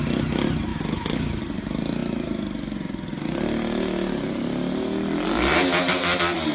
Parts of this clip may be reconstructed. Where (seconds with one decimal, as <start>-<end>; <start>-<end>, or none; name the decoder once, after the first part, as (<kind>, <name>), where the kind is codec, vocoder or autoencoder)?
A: 0.7-1.4 (autoencoder, DAC-VAE)